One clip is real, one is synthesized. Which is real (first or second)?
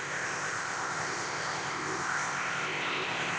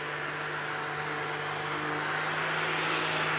second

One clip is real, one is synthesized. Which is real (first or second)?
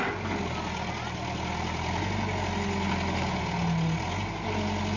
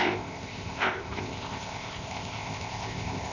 first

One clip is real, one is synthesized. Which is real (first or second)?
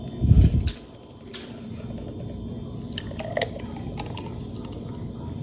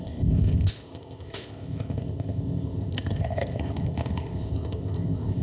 first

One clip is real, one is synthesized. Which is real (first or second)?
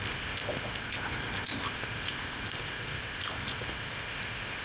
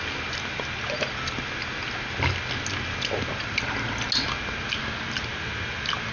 second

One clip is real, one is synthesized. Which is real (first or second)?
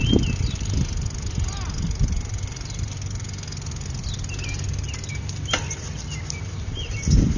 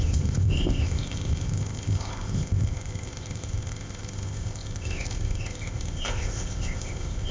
first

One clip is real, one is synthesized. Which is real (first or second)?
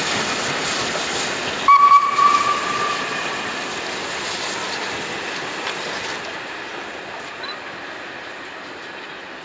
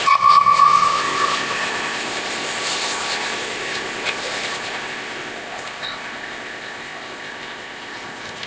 first